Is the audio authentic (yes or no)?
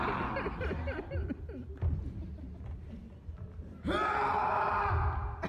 yes